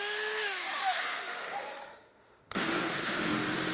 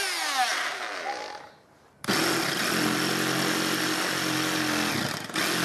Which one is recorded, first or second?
second